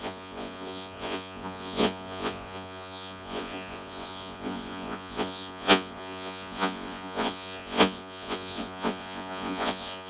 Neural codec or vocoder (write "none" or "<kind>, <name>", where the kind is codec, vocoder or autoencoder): vocoder, Vocos